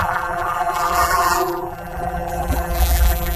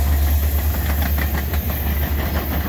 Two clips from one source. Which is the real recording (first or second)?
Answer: second